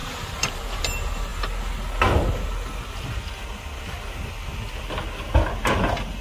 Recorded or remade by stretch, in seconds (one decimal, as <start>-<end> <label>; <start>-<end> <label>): 0.0-0.8 remade; 0.8-6.2 recorded